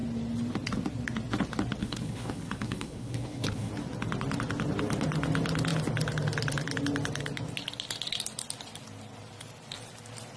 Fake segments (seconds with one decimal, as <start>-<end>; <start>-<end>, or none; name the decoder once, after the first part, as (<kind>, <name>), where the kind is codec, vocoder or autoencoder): 1.8-3.7 (codec, HILCodec)